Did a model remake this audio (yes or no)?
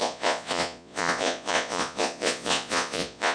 yes